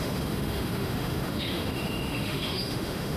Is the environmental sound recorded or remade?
remade